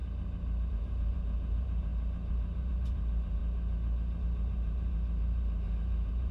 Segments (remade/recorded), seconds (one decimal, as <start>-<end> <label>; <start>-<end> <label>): 0.0-0.7 recorded; 0.7-3.4 remade; 3.4-4.2 recorded; 4.2-6.3 remade